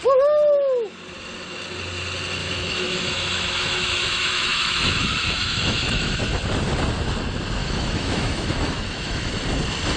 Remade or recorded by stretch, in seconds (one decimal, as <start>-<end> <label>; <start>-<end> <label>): 0.0-2.4 recorded; 2.4-6.2 remade; 6.2-7.6 recorded; 7.6-9.3 remade; 9.3-10.0 recorded